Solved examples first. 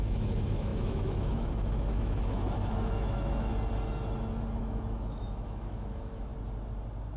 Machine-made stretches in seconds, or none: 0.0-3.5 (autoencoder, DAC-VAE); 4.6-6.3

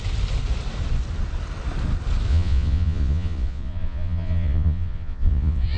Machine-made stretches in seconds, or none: 2.3-5.8 (vocoder, Vocos)

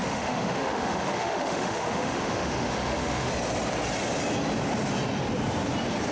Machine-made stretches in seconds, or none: 0.0-3.3 (autoencoder, DAC-VAE)